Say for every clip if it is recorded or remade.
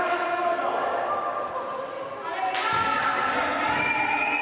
recorded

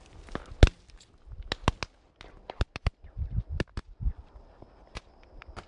recorded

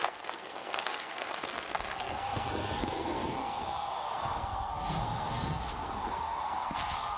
remade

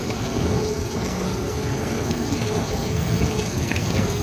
remade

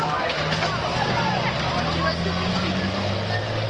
recorded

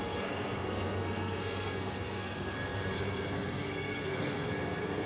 remade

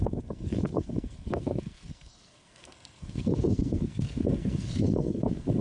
remade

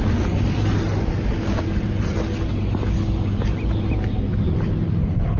recorded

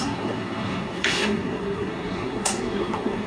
remade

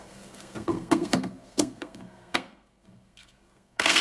remade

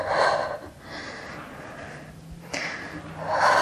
recorded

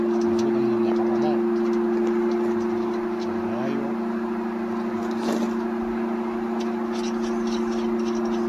recorded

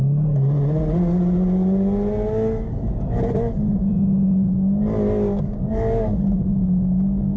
recorded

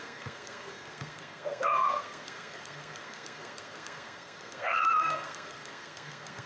remade